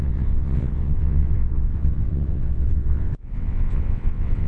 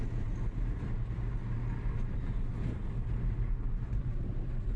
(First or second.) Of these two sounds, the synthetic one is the first